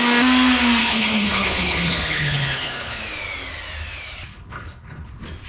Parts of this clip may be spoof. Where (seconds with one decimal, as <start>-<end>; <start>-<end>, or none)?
0.8-3.0; 4.3-5.1